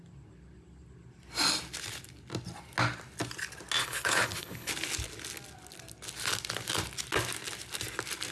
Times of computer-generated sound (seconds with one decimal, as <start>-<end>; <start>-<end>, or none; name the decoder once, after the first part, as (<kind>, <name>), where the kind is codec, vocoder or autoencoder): 3.8-4.7 (codec, HILCodec)

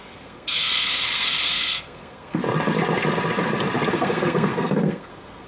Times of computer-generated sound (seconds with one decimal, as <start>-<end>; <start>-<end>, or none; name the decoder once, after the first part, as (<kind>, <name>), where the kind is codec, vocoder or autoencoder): 0.0-2.4 (codec, SNAC); 3.9-5.5

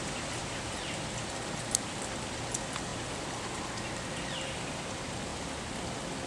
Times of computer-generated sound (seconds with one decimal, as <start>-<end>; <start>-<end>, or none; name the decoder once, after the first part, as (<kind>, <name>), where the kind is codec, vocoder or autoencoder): none

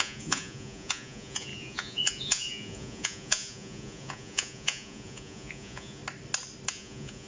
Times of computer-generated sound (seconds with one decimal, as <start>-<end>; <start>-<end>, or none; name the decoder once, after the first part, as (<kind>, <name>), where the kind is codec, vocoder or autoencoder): 0.0-6.0 (vocoder, Vocos); 6.7-7.3

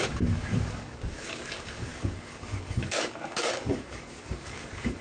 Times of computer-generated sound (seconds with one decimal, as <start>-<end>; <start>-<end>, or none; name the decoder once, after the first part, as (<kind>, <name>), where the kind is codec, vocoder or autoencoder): 0.0-5.0 (codec, DAC)

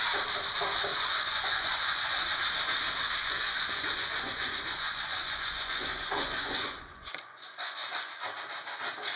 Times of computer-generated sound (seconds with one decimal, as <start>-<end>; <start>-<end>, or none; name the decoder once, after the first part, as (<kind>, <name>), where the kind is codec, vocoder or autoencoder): 0.9-2.3 (vocoder, Vocos); 3.2-8.1

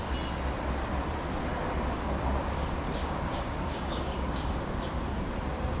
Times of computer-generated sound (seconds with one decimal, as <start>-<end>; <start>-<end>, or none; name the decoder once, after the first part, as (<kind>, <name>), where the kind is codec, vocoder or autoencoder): 3.0-4.8 (codec, DAC)